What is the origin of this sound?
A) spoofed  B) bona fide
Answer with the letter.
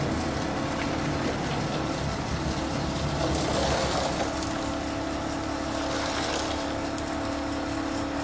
B